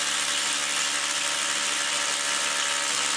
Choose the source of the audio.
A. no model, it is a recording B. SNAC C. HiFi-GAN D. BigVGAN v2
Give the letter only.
A